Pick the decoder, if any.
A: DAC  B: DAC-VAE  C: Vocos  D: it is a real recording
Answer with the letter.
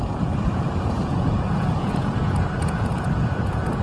C